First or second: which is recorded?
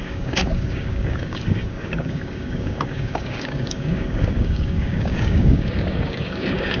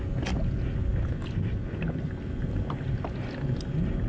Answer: second